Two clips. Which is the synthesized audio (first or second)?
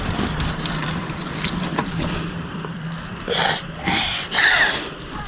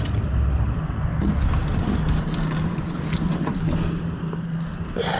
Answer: first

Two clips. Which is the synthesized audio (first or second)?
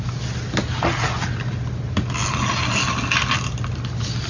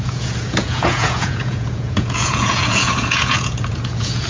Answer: second